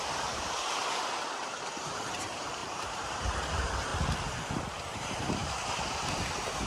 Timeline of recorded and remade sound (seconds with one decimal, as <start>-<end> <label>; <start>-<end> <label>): 0.0-0.8 remade; 0.8-1.4 recorded; 1.4-3.9 remade; 3.9-4.5 recorded; 4.5-5.4 remade; 5.4-6.0 recorded; 6.0-6.7 remade